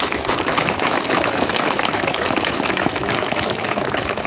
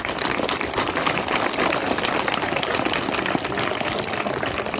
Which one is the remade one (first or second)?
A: first